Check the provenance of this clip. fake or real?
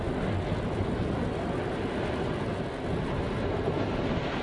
real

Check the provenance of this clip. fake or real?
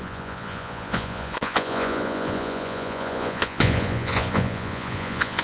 fake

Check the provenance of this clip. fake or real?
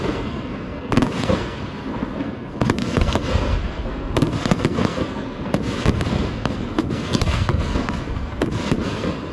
fake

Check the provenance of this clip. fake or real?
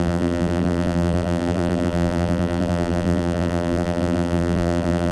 fake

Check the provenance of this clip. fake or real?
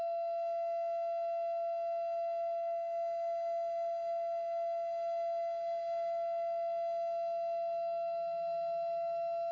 real